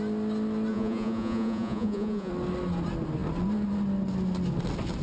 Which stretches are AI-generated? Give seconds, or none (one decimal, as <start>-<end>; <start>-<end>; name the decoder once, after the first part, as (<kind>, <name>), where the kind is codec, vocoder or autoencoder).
0.7-2.3 (vocoder, Vocos)